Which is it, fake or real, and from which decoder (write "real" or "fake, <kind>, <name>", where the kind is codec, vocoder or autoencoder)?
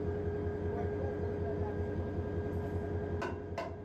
real